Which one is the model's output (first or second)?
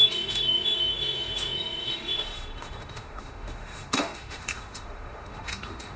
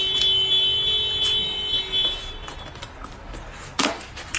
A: first